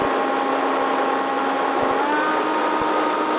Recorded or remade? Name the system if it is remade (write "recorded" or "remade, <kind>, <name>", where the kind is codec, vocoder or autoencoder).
recorded